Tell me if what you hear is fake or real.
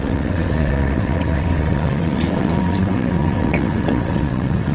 fake